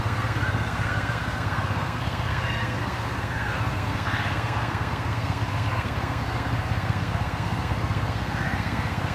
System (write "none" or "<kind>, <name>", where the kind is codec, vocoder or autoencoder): codec, SNAC